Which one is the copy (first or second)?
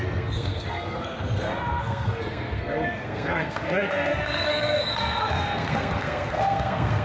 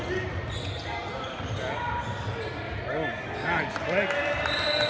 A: first